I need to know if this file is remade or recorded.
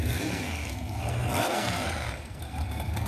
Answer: remade